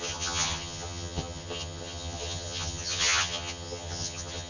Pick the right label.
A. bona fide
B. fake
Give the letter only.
B